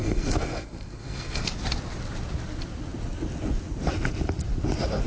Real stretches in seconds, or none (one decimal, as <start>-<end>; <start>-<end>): 1.5-5.1

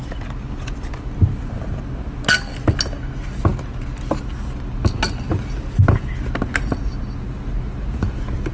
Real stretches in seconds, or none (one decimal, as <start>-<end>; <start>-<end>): 0.0-8.5

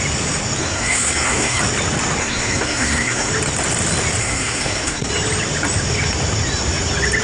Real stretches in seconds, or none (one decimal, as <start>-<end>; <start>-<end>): 0.0-0.6; 1.6-2.2; 3.3-4.2; 5.1-7.2

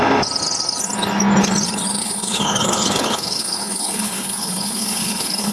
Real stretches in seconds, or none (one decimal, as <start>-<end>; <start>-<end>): 0.0-2.0

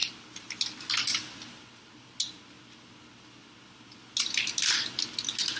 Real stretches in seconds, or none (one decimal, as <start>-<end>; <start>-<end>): 0.0-5.6

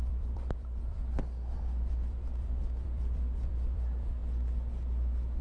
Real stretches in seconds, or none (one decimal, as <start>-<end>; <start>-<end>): 4.2-5.4